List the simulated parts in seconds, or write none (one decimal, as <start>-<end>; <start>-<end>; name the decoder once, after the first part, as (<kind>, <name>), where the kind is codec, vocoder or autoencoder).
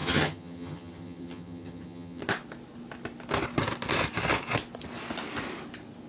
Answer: 0.0-2.2 (vocoder, HiFi-GAN)